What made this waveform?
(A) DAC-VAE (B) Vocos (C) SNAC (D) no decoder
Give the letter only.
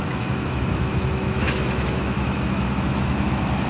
A